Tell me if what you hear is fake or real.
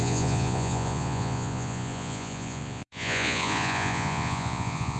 fake